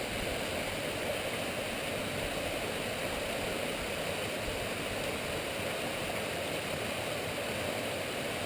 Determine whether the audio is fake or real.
real